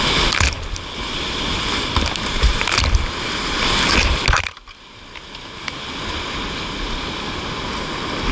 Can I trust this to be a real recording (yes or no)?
yes